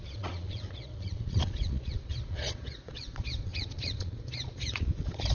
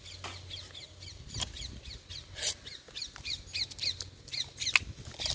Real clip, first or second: second